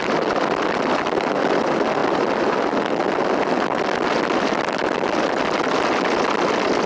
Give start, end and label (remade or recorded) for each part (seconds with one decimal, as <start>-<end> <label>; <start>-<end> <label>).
0.0-6.9 recorded